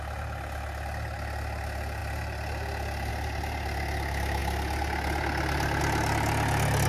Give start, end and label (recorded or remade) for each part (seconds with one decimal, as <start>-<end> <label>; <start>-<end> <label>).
0.0-6.9 recorded